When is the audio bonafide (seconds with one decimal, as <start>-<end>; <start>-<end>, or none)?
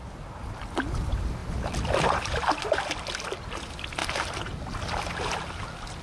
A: 0.0-6.0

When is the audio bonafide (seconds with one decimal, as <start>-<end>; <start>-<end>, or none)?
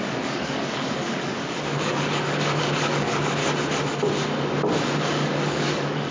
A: 3.4-5.0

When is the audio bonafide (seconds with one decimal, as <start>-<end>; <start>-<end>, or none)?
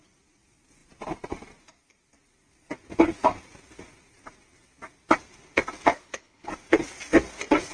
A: 0.0-5.9; 6.5-7.7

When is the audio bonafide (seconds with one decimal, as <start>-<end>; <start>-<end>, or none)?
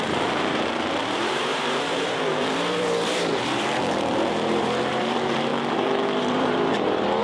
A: 5.5-6.2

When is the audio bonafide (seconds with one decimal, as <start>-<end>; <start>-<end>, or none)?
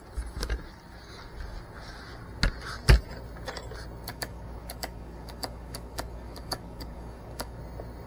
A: 0.0-4.1; 7.6-8.1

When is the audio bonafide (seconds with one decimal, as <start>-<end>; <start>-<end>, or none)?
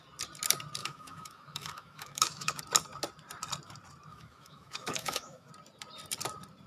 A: 0.0-0.8; 2.6-4.1; 5.5-6.7